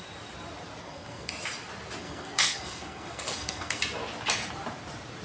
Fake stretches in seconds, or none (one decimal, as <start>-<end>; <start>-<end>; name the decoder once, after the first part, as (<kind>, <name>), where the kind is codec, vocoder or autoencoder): 0.8-1.3 (codec, SNAC); 2.0-3.8